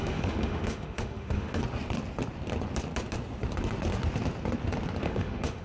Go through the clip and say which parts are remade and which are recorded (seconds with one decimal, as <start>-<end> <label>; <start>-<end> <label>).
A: 0.0-1.6 remade; 1.6-5.0 recorded; 5.0-5.6 remade